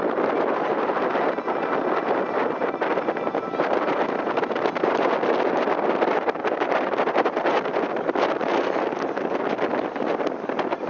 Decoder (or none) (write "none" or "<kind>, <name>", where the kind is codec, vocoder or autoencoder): none